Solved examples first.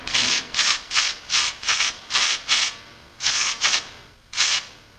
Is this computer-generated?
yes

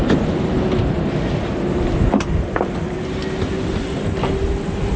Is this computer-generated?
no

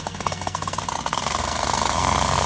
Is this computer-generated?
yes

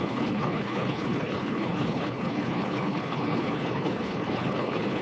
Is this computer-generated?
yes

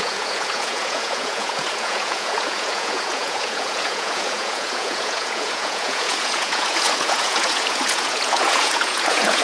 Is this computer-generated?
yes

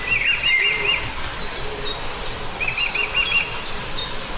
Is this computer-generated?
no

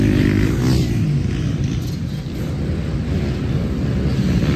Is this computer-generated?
no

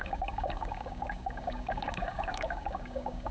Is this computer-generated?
yes